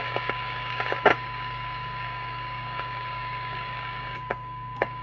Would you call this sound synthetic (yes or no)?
yes